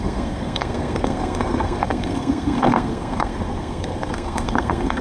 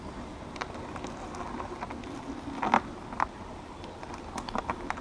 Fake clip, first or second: first